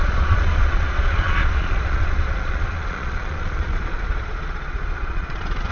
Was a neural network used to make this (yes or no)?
yes